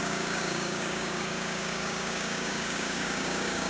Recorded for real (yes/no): no